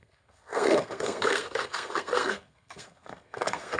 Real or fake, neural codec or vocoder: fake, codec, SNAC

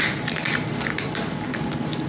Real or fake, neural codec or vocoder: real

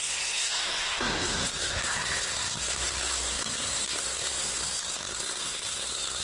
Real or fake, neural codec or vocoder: fake, codec, SNAC